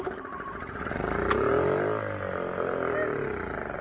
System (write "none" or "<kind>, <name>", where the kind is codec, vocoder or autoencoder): none